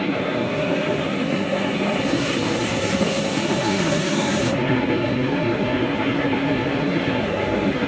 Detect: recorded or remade remade